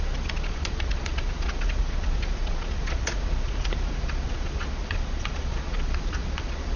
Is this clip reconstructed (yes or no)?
yes